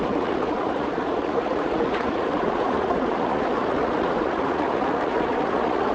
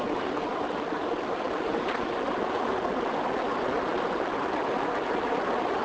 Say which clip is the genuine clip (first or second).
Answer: second